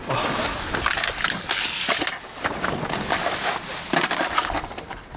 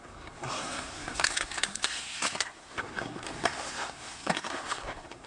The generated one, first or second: second